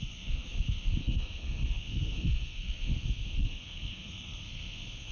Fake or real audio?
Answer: fake